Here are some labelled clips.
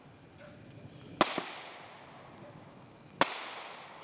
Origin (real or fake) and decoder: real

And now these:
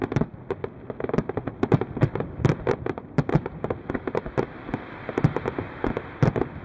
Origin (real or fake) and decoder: fake, vocoder, BigVGAN v2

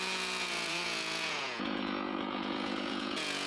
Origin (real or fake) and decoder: fake, vocoder, Vocos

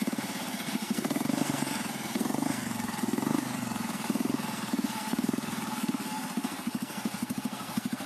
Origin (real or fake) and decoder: fake, codec, SNAC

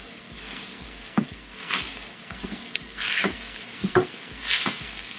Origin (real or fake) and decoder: fake, codec, SNAC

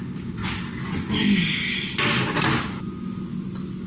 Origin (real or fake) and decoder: real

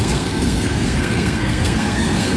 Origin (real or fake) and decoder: fake, codec, SNAC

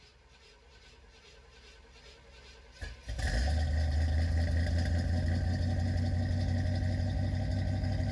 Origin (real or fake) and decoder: real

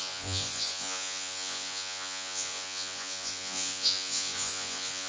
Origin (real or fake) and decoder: fake, vocoder, Vocos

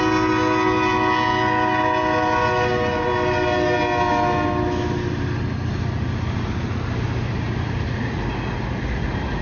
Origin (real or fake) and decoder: real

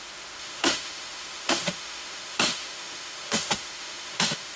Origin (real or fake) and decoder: fake, autoencoder, DAC-VAE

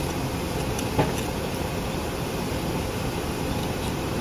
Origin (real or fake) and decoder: real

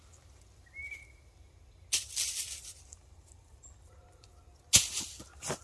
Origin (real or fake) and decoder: real